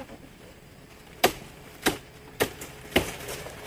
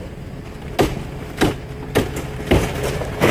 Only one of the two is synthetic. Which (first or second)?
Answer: first